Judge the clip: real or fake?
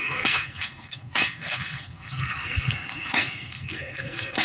fake